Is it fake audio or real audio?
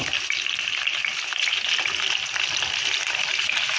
real